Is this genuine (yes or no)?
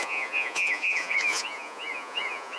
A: no